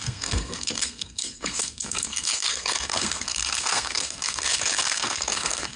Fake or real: fake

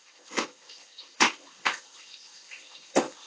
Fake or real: fake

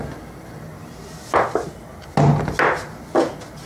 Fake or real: real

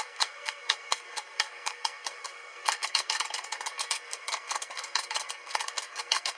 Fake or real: fake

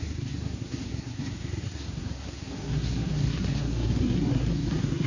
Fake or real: fake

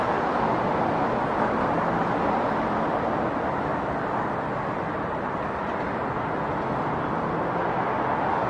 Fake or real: real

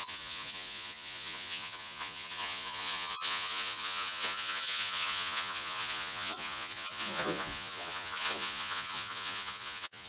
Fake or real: fake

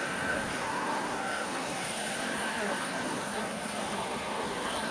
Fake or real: fake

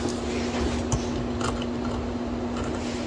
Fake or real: real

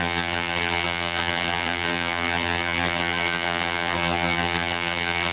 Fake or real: fake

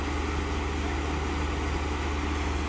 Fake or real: real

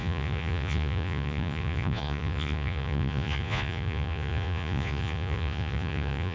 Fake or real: fake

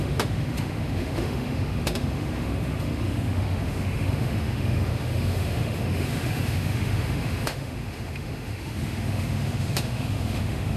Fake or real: fake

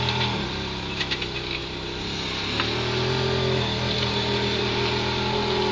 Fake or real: real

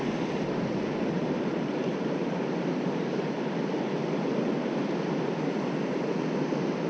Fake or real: real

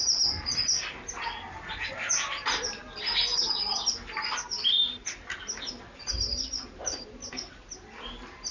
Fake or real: real